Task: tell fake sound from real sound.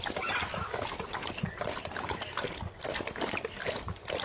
real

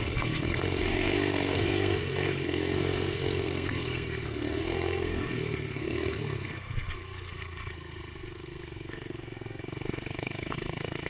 fake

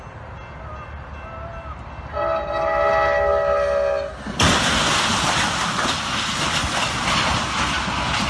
real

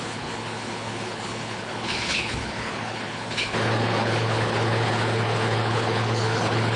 fake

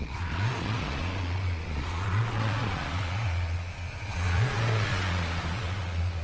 fake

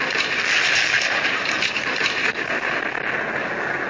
real